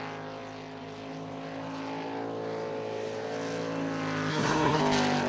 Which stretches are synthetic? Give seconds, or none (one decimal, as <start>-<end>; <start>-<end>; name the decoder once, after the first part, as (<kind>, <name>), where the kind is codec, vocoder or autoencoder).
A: 4.3-4.8 (codec, SNAC)